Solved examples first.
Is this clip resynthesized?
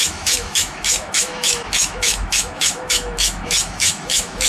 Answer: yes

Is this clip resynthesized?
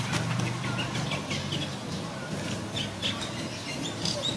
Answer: no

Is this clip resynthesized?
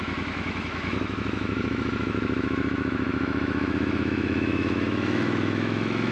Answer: yes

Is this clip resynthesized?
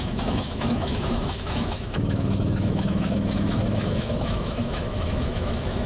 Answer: yes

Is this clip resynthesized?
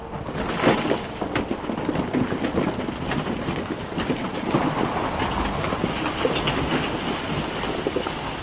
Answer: no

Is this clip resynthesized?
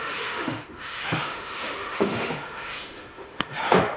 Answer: yes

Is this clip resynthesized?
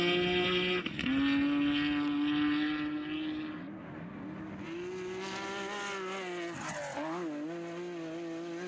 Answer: no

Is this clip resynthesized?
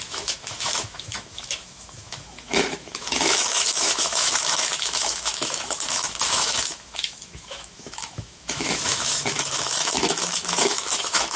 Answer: yes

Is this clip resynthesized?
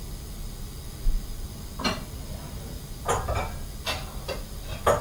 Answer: no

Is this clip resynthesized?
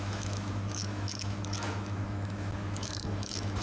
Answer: yes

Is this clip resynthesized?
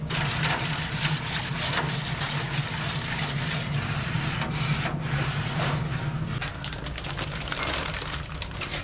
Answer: no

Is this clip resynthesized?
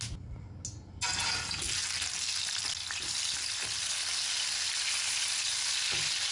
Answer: no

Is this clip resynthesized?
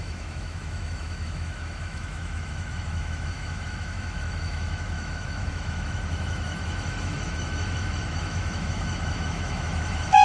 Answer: yes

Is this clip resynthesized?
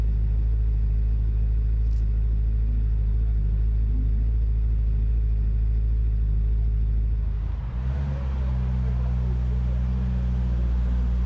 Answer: no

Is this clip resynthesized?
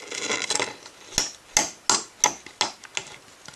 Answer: no